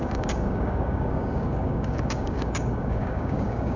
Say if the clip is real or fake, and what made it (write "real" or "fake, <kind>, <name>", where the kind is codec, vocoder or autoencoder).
fake, codec, DAC